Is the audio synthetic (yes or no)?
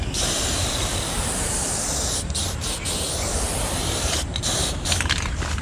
no